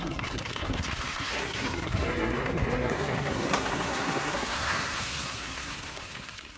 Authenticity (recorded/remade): remade